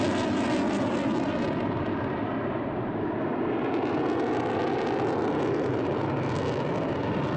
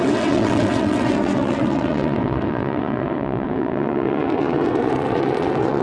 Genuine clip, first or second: first